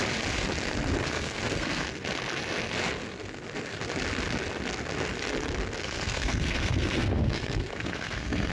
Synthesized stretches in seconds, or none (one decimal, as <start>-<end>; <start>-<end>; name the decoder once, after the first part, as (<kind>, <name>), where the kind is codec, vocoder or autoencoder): 1.0-1.8 (codec, SNAC); 5.8-8.5